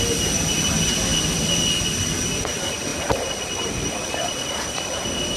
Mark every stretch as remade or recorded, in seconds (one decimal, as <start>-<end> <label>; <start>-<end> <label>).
0.0-5.4 recorded